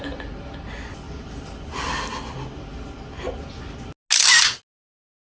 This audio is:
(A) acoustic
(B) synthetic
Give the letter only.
A